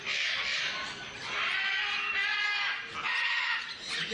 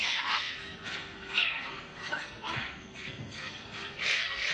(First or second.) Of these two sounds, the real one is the first